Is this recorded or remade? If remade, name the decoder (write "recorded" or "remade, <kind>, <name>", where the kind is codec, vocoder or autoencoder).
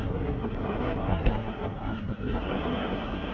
remade, codec, SNAC